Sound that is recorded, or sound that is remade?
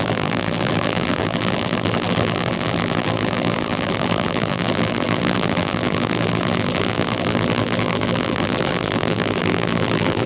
remade